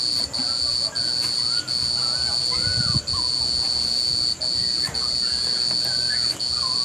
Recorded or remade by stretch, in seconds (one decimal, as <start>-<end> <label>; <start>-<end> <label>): 0.0-6.8 recorded